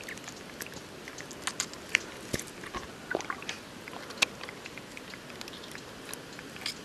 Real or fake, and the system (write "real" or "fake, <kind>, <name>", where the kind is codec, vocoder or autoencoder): real